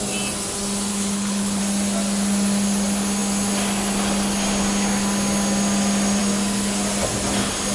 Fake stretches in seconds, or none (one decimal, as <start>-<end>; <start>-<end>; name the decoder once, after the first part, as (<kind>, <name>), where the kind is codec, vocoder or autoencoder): 0.9-1.6 (codec, HILCodec)